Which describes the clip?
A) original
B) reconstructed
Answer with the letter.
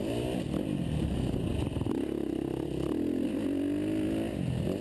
A